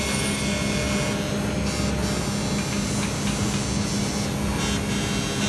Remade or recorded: recorded